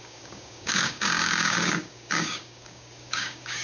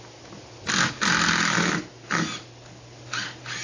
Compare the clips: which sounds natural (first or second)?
second